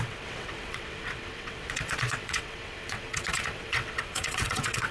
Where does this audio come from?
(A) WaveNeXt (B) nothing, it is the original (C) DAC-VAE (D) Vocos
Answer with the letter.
A